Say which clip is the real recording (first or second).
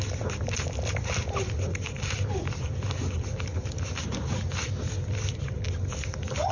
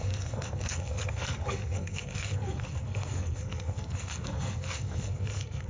first